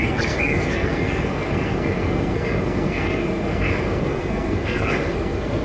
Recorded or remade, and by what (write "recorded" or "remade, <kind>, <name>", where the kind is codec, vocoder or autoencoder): remade, codec, SNAC